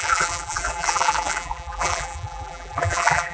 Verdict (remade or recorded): remade